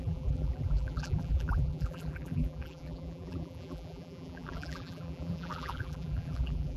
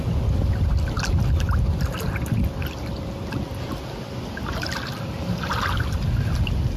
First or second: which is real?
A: second